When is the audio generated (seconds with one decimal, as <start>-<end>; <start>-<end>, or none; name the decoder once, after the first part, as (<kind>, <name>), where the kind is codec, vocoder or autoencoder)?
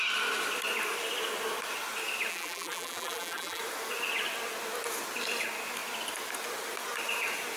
2.3-3.6 (vocoder, BigVGAN v2)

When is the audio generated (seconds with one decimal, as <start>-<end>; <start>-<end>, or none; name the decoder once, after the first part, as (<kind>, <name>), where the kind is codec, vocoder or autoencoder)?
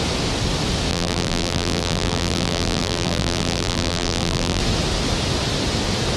0.9-4.6 (vocoder, BigVGAN v2)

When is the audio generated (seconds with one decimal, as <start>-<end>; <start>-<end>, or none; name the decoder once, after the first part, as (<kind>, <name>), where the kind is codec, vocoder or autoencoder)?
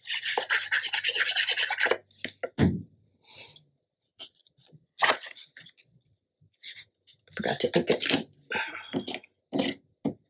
4.1-6.1 (vocoder, Vocos)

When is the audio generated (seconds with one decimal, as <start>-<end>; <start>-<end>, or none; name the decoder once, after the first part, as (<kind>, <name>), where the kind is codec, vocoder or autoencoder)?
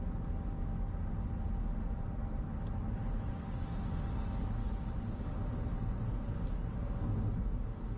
5.6-6.3 (vocoder, BigVGAN v2)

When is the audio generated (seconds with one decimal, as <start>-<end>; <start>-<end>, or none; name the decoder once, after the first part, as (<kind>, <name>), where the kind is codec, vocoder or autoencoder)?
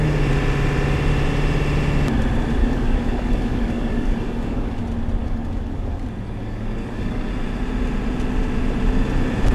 2.6-4.8 (codec, DAC); 5.2-6.0; 6.4-7.3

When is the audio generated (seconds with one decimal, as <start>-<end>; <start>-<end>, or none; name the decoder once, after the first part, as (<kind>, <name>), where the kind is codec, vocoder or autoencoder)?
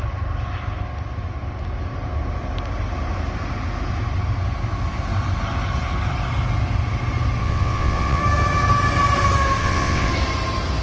7.4-8.2 (vocoder, WaveNeXt); 9.6-10.1